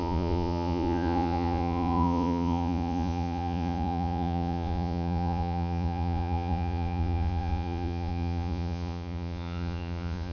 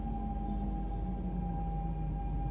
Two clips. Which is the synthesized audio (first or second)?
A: first